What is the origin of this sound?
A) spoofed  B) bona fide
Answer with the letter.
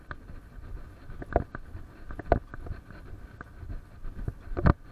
B